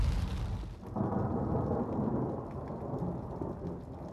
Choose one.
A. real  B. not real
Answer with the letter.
A